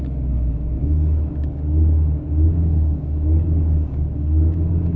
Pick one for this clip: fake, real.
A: fake